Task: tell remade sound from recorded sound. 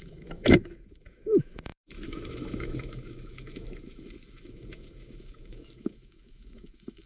remade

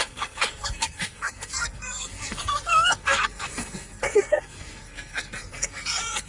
remade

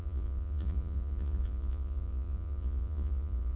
remade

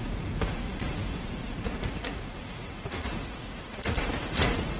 remade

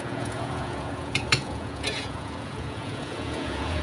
remade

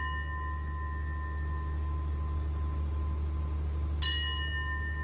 recorded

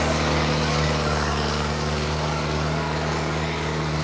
remade